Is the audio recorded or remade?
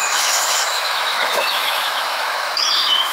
remade